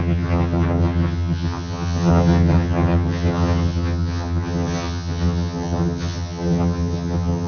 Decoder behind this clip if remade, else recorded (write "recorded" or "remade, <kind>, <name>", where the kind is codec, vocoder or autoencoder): remade, vocoder, HiFi-GAN